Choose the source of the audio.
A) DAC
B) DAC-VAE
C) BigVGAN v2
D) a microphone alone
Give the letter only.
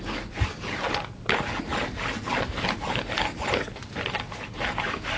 D